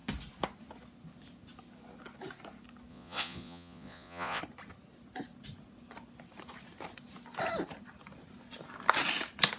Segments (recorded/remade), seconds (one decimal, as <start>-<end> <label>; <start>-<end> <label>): 0.0-2.9 recorded; 2.9-4.4 remade; 4.4-9.6 recorded